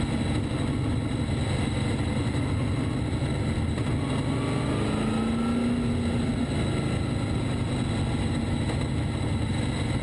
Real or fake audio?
real